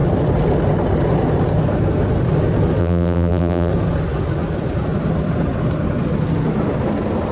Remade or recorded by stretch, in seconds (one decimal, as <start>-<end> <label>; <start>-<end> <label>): 0.0-2.8 recorded; 2.8-3.7 remade; 3.7-7.3 recorded